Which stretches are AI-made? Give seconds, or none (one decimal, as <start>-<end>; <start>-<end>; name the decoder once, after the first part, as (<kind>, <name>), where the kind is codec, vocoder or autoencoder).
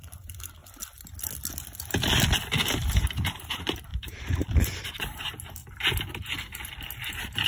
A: 0.0-0.6 (vocoder, BigVGAN v2); 2.6-5.6; 7.1-7.5